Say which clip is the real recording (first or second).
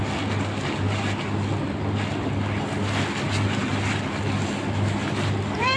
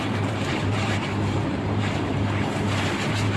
first